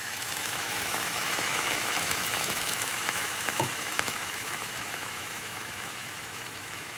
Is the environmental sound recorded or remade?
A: remade